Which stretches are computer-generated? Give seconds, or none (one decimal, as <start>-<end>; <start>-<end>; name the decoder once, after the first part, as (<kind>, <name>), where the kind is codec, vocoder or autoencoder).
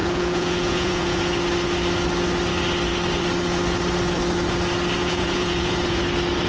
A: 0.0-1.2 (vocoder, Vocos); 5.0-6.0